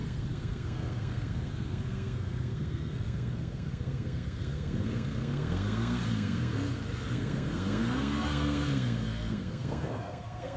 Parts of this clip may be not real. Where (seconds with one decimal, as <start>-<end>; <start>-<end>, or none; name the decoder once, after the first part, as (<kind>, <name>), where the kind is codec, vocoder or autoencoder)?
0.0-10.6 (codec, SNAC)

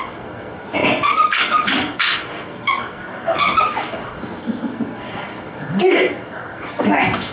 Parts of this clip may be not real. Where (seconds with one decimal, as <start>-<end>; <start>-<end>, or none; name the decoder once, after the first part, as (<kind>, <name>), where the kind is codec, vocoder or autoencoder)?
0.0-7.3 (codec, SNAC)

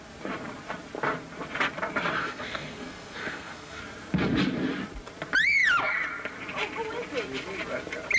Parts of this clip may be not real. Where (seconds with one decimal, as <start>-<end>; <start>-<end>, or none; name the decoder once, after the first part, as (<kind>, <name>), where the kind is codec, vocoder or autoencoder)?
2.2-3.8 (codec, SNAC)

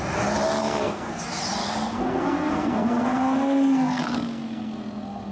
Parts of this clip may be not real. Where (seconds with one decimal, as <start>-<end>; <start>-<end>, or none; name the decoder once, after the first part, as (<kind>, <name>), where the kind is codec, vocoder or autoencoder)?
0.6-1.2 (codec, SNAC); 1.6-4.8

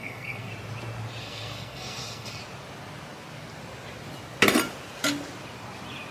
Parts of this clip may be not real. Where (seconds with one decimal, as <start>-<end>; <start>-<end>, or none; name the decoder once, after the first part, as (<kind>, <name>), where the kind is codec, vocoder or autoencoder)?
0.0-0.5 (codec, SNAC); 1.2-2.4